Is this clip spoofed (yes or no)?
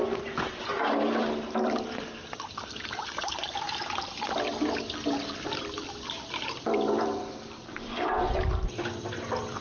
yes